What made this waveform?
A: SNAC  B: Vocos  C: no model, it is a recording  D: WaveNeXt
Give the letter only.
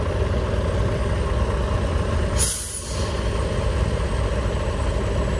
C